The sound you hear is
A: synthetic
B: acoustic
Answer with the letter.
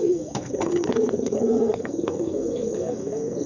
A